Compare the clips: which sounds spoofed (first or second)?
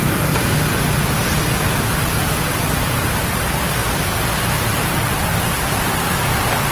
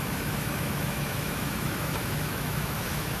second